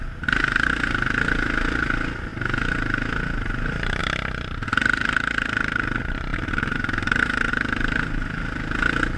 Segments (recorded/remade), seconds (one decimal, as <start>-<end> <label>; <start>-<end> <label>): 0.0-6.3 recorded; 6.3-7.5 remade; 7.5-9.2 recorded